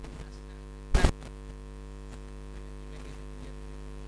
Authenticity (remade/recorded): recorded